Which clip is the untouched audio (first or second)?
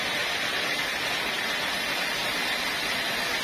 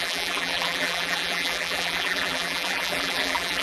first